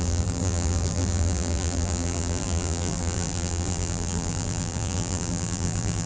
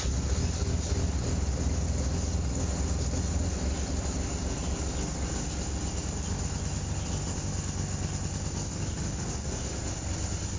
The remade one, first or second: first